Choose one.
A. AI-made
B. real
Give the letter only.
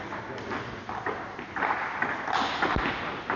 B